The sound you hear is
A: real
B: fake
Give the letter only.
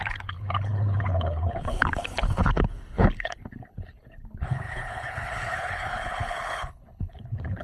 B